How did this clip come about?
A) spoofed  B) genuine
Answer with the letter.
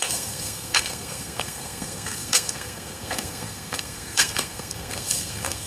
A